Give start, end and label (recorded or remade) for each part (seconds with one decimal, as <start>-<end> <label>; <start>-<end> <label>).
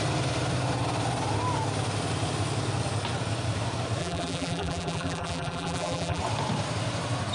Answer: 0.0-4.0 recorded; 4.0-6.2 remade; 6.2-7.3 recorded